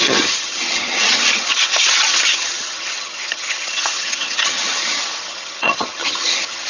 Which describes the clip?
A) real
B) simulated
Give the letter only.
B